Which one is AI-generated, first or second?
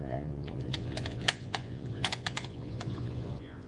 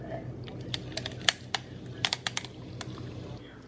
first